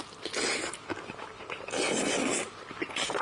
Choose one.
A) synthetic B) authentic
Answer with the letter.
A